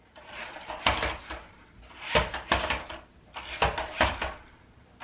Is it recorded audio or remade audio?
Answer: recorded